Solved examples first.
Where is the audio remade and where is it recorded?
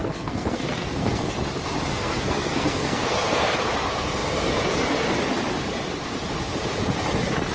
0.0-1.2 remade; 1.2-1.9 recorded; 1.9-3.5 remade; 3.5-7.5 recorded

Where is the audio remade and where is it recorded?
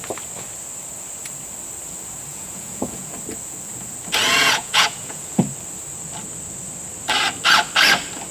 0.0-2.3 recorded; 2.3-3.1 remade; 3.1-4.4 recorded; 4.4-5.4 remade; 5.4-8.3 recorded